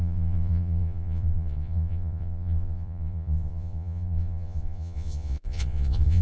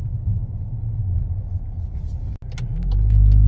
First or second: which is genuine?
second